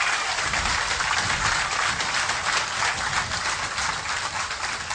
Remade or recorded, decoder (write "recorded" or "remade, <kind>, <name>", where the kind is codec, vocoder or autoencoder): recorded